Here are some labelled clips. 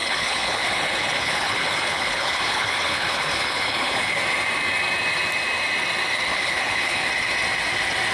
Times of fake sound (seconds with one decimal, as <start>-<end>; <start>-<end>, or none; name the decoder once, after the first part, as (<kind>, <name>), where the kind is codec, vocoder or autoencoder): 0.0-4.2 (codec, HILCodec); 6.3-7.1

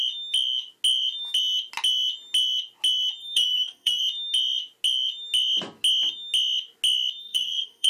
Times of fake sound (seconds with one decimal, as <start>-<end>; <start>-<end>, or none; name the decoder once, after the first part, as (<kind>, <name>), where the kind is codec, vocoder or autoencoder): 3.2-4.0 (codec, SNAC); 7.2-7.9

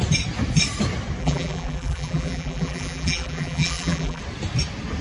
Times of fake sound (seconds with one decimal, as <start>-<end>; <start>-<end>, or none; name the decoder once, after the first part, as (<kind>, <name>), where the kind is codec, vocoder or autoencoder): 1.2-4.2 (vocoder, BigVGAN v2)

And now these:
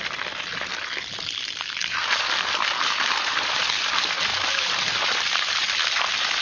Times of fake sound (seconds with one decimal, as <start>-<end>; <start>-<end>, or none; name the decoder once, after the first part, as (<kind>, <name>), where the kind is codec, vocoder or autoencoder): 1.8-3.6 (vocoder, BigVGAN v2); 4.3-5.5

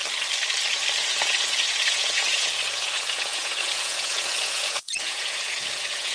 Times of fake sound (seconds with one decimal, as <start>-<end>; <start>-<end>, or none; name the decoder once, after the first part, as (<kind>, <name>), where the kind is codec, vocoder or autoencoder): 1.0-6.1 (vocoder, Vocos)

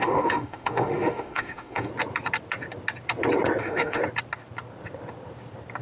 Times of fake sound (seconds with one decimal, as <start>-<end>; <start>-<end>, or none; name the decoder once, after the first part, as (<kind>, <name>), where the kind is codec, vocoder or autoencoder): 0.0-1.9 (autoencoder, DAC-VAE); 3.6-4.0

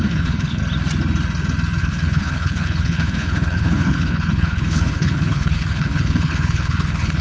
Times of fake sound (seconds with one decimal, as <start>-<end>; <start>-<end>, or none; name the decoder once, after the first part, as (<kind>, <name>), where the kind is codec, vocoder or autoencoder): 0.0-0.6 (codec, HILCodec); 1.8-7.2